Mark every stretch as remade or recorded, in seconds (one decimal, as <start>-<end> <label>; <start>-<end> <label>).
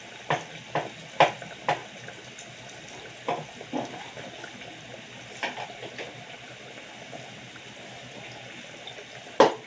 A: 0.0-9.7 recorded